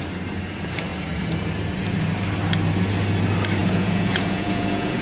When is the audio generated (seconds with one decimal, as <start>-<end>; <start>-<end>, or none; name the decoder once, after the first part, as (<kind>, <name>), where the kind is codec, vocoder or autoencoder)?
3.6-5.0 (vocoder, Vocos)